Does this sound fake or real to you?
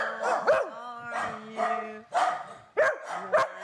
real